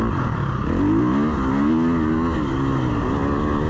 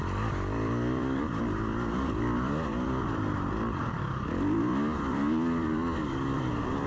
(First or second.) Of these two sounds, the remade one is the second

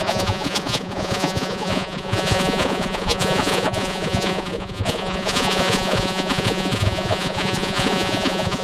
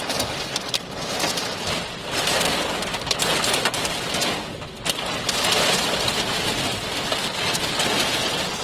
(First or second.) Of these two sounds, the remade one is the first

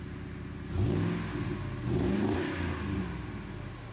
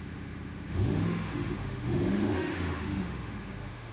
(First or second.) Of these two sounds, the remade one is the second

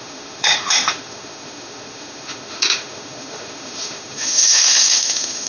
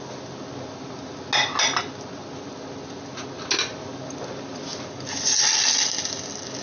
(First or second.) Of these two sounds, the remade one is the first